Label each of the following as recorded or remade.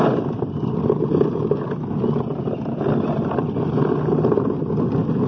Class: recorded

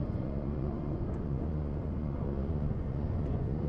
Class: remade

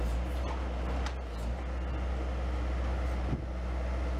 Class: recorded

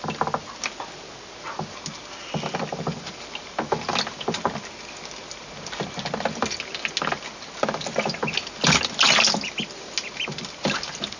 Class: recorded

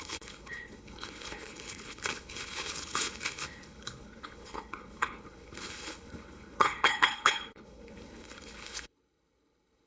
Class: remade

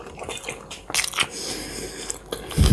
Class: recorded